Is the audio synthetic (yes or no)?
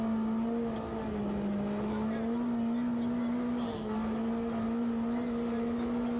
no